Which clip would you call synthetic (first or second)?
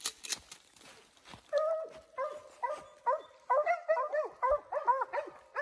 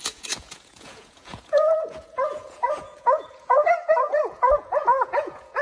second